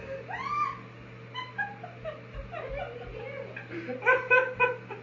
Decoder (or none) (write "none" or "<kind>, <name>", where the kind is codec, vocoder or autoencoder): none